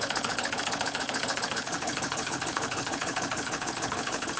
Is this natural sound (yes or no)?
no